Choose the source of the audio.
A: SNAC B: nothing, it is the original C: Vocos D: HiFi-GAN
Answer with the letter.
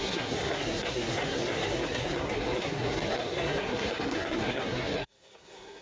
A